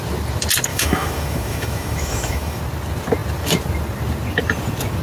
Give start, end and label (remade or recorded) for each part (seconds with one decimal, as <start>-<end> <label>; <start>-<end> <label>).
0.0-0.7 recorded; 0.7-2.6 remade; 2.6-5.0 recorded